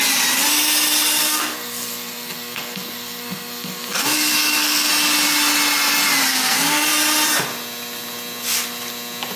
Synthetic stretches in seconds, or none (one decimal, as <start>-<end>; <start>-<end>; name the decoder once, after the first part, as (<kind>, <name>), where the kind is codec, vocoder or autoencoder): 1.2-4.9 (codec, SNAC); 6.3-6.9